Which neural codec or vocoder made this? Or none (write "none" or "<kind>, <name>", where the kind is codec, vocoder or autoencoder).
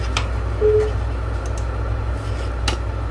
none